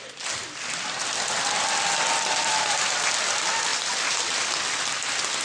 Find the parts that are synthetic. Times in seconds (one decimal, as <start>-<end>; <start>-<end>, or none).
none